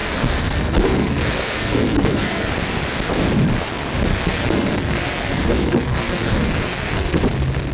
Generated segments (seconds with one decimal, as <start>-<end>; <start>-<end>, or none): 0.0-2.5; 4.1-7.2